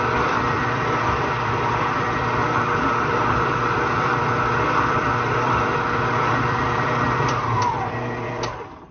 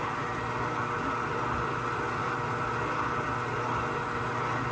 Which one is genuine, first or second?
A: second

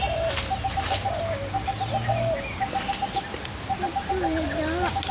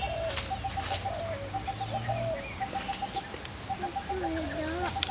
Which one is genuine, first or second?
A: second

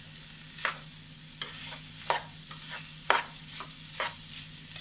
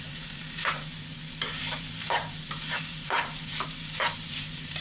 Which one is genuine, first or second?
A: first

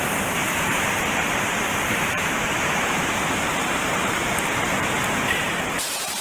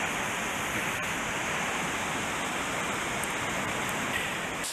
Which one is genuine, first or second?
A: second